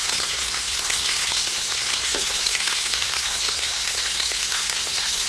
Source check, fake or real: fake